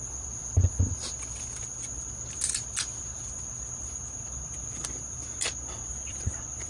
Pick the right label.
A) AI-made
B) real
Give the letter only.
B